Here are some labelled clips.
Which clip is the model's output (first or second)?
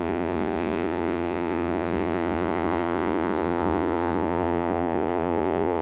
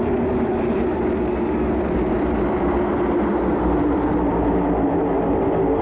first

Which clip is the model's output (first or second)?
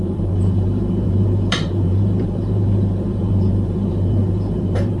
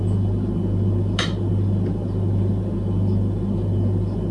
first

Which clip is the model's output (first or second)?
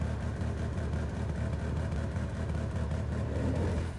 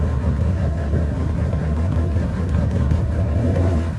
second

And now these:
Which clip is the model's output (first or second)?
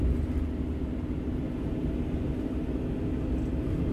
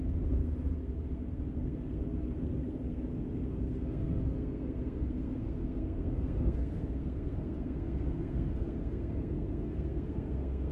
second